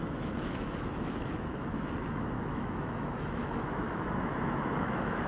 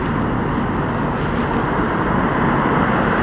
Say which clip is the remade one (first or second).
first